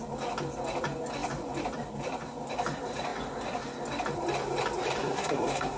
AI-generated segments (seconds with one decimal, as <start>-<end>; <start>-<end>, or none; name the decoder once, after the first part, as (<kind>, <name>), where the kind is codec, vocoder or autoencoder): 5.0-5.8 (codec, SNAC)